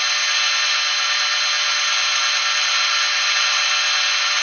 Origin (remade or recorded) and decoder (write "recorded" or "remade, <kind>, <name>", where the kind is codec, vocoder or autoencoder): recorded